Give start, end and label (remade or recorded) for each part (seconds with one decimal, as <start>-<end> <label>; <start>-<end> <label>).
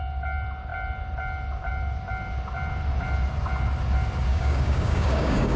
0.0-4.3 recorded; 4.3-5.6 remade